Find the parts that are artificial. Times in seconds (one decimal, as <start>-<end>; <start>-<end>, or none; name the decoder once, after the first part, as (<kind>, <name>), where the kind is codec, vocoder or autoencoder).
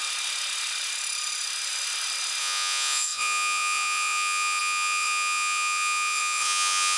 2.4-7.0 (vocoder, Vocos)